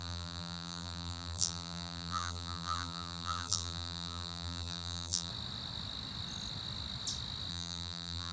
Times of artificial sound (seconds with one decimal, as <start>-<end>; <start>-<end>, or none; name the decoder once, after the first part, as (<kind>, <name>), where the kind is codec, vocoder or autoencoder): 0.0-5.3 (vocoder, BigVGAN v2); 7.5-8.3